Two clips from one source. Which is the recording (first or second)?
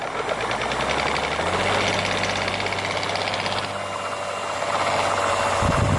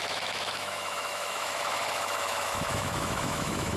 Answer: first